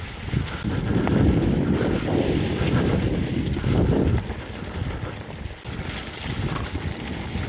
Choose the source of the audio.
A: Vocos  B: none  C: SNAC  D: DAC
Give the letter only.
B